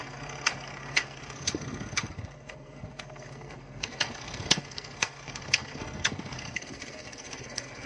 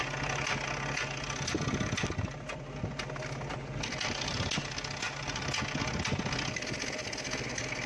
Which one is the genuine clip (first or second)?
second